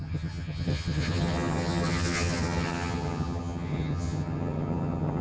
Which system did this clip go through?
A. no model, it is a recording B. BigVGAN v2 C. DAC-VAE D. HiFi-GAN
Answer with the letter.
D